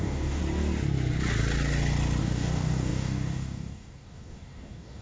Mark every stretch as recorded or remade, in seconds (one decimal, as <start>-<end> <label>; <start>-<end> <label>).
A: 0.0-0.4 remade; 0.4-2.2 recorded; 2.2-5.0 remade